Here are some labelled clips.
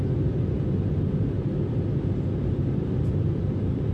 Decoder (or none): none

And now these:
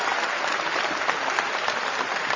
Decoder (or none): none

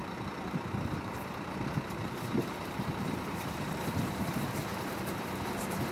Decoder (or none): vocoder, BigVGAN v2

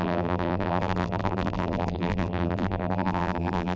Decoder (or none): vocoder, BigVGAN v2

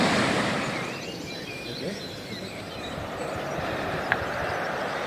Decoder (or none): vocoder, BigVGAN v2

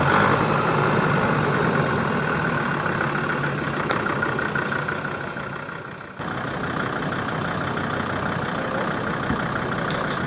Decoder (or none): none